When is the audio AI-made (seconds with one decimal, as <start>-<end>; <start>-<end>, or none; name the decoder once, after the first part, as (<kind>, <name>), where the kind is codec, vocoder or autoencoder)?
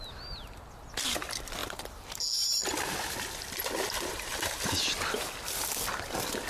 none